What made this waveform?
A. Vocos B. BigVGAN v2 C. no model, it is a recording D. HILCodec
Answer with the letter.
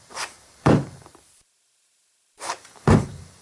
B